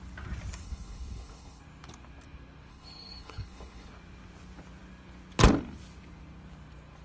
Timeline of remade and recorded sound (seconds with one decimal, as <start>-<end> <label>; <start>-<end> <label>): 0.0-0.6 recorded; 0.6-1.6 remade; 1.6-2.7 recorded; 2.7-3.9 remade; 3.9-7.0 recorded